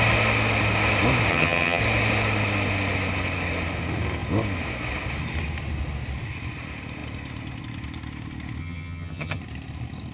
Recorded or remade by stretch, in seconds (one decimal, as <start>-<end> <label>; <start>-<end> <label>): 0.0-1.3 recorded; 1.3-1.8 remade; 1.8-8.6 recorded; 8.6-9.4 remade; 9.4-10.1 recorded

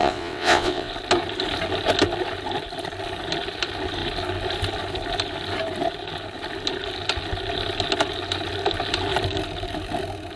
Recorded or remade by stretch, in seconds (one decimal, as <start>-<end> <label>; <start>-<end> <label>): 0.0-0.9 remade; 0.9-10.4 recorded

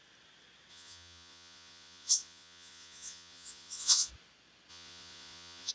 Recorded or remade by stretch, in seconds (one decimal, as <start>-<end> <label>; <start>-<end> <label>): 0.0-0.7 recorded; 0.7-4.1 remade; 4.1-4.7 recorded; 4.7-5.7 remade

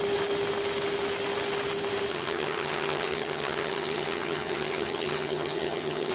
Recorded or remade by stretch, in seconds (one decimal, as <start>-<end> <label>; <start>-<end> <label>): 0.0-2.1 recorded; 2.1-6.1 remade

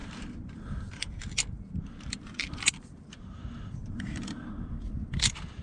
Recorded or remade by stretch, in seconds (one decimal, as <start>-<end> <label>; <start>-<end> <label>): 0.0-3.4 remade; 3.4-3.8 recorded; 3.8-4.7 remade; 4.7-5.6 recorded

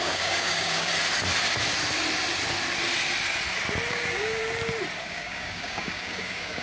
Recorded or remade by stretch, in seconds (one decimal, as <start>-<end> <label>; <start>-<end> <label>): 0.0-0.9 remade; 0.9-3.9 recorded; 3.9-4.4 remade; 4.4-5.0 recorded; 5.0-6.6 remade